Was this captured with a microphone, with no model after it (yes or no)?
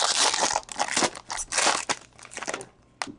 yes